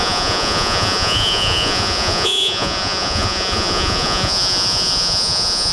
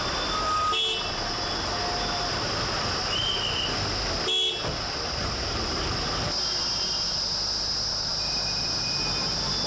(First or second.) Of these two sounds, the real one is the second